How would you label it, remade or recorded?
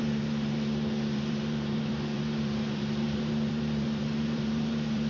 remade